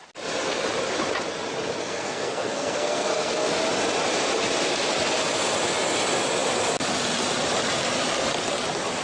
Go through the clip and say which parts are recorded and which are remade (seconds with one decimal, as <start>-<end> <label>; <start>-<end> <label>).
0.0-1.8 recorded; 1.8-3.5 remade; 3.5-9.0 recorded